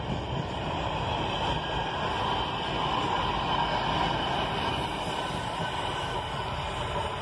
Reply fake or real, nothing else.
real